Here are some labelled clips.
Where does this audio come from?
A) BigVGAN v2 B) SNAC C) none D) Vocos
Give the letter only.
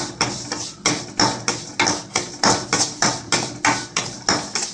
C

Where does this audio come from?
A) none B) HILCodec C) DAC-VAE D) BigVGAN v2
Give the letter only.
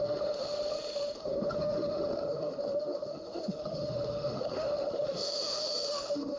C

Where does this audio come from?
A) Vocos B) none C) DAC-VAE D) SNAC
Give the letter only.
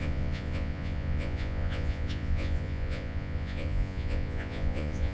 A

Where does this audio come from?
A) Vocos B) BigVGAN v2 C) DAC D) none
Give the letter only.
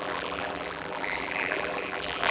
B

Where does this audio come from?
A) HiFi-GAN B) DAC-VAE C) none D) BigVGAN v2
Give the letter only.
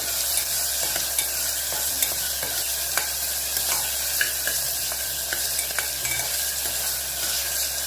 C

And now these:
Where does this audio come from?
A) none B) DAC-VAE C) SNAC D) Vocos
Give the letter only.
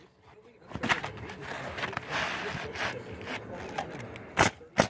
A